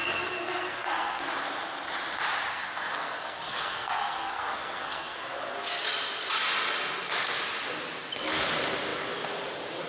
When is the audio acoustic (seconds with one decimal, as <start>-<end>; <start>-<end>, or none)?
1.2-2.5; 5.4-9.9